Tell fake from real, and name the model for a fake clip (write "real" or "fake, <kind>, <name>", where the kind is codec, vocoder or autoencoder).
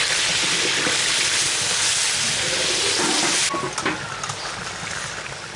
real